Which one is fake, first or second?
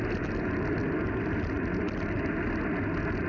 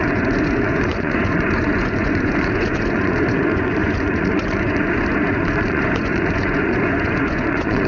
second